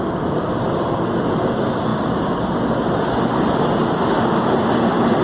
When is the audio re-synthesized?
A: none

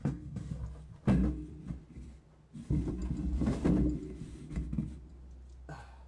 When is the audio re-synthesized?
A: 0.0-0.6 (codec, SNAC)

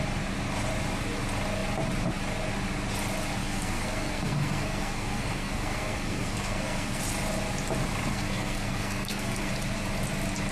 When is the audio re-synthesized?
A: 3.4-7.0 (codec, SNAC); 8.1-9.5

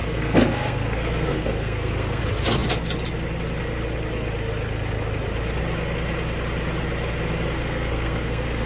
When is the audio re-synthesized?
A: 0.0-2.2 (codec, SNAC); 7.6-8.7

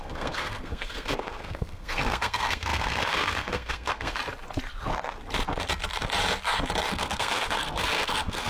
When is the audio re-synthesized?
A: 0.0-4.2 (codec, SNAC); 6.9-8.5